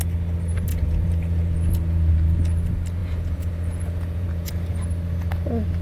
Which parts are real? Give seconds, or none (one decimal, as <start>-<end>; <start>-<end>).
0.0-0.7; 2.1-3.0; 4.5-5.8